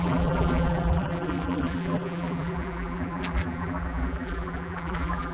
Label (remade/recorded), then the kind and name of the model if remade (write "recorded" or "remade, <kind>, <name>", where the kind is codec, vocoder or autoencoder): remade, vocoder, BigVGAN v2